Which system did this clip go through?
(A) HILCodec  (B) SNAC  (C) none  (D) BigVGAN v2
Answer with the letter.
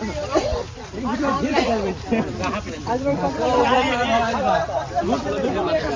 D